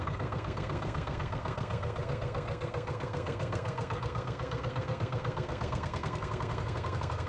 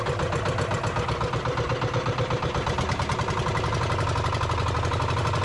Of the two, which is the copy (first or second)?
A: first